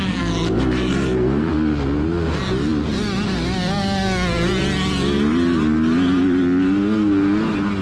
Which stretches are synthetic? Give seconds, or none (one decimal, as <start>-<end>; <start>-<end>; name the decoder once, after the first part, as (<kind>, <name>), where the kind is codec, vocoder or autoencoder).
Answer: 0.0-1.5 (codec, SNAC)

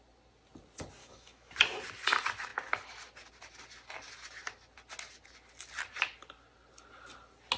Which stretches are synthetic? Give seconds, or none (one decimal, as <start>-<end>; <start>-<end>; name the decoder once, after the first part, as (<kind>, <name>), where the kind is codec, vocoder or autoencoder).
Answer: 1.0-1.5 (autoencoder, DAC-VAE)

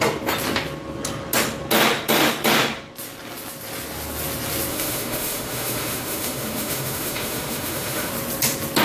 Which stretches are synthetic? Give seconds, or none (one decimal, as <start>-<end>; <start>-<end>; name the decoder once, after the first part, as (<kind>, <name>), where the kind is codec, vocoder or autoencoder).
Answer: 4.7-8.1 (autoencoder, DAC-VAE)

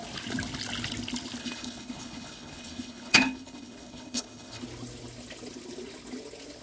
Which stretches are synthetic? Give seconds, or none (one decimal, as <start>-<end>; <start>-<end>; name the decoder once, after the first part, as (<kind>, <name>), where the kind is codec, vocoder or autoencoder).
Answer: 1.4-4.6 (codec, HILCodec)

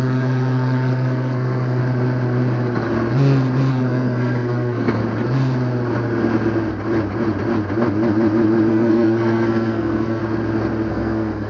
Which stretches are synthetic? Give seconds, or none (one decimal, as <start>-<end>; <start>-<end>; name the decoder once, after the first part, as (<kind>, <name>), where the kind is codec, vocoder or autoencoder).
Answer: 0.0-1.8 (codec, SNAC); 3.7-5.0; 8.7-10.2; 10.9-11.5